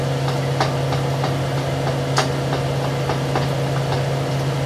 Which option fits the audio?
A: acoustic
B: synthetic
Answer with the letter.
A